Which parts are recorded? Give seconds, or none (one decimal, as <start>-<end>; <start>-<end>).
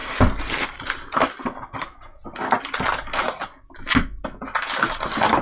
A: 0.0-5.4